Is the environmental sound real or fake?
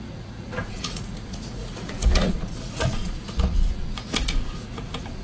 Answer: fake